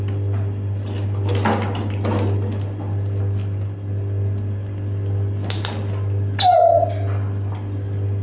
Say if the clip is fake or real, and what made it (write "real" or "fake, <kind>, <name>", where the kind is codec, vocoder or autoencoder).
real